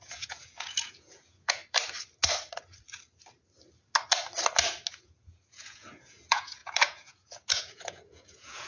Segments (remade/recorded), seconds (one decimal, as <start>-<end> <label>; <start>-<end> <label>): 0.0-1.6 remade; 1.6-4.9 recorded; 4.9-8.7 remade